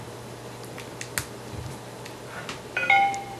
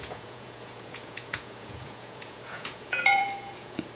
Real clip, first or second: first